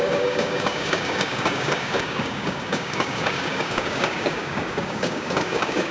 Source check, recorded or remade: remade